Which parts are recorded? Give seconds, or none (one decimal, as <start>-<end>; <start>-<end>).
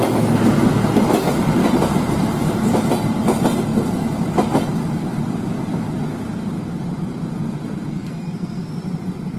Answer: 0.0-7.9; 8.7-9.4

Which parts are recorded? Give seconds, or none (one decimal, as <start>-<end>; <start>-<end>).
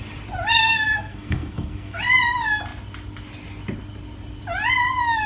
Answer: 0.0-0.6; 2.0-5.3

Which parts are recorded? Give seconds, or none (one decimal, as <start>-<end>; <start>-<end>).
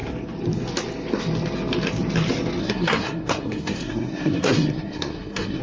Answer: 0.0-2.6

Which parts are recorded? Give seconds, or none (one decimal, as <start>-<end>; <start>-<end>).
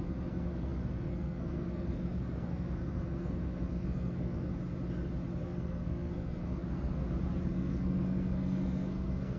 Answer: 4.5-5.4; 7.0-7.5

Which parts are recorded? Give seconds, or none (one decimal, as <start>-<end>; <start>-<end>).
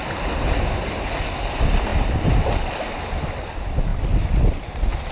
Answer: 0.0-5.1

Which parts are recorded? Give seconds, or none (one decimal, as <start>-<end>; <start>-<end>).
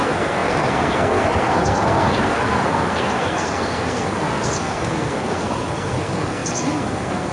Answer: none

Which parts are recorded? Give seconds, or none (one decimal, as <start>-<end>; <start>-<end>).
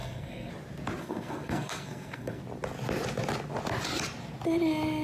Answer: 0.5-1.0; 2.4-5.0